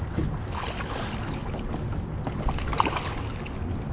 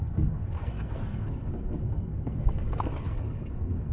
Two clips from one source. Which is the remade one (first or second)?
second